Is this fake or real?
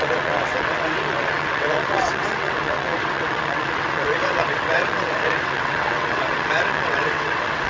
fake